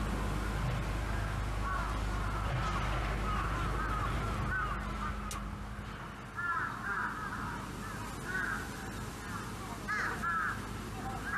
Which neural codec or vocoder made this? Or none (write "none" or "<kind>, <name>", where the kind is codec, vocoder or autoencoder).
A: none